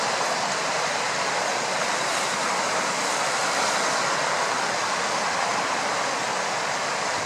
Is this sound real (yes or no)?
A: yes